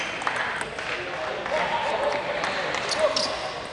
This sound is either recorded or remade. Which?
recorded